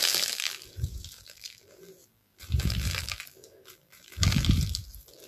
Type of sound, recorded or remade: remade